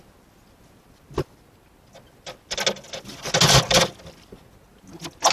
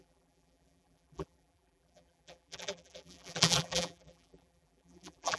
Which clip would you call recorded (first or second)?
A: first